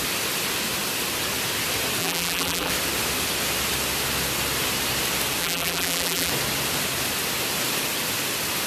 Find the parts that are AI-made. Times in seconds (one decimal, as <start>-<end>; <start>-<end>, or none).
2.0-2.7; 5.4-6.3